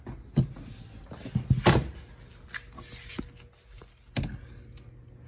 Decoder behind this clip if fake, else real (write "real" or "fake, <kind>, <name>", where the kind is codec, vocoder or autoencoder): real